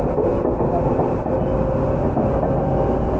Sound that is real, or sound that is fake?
real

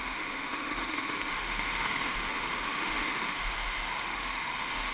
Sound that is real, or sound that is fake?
fake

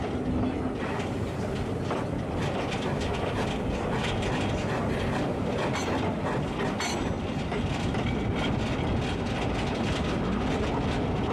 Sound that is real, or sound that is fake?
real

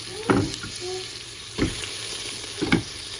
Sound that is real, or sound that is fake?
real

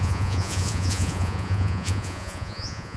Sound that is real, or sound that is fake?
fake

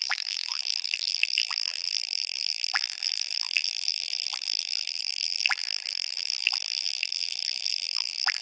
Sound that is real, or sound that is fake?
fake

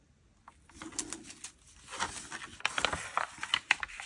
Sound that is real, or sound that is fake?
real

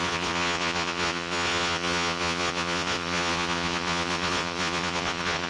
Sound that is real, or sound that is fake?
fake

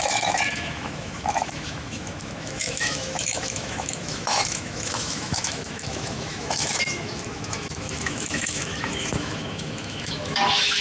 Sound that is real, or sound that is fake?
fake